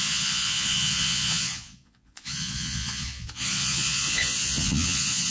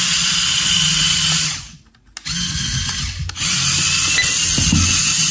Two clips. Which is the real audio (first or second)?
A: second